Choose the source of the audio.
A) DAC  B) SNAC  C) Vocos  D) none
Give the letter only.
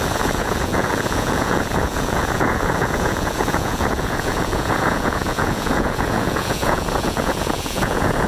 C